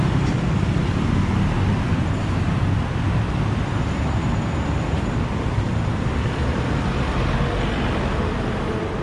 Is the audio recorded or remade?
recorded